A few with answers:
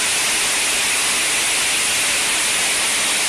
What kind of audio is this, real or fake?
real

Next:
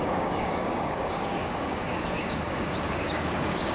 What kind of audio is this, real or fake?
fake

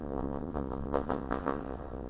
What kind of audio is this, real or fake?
fake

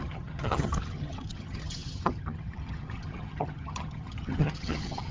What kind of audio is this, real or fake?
fake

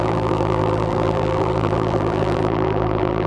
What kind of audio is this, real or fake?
fake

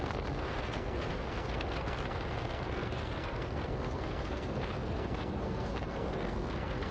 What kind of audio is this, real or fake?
fake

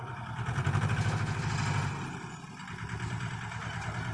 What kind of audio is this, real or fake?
real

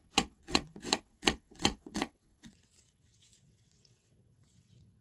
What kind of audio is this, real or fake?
fake